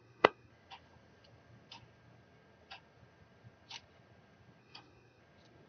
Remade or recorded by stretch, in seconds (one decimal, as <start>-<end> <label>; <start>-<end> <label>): 0.0-0.5 remade; 0.5-4.6 recorded; 4.6-5.2 remade; 5.2-5.7 recorded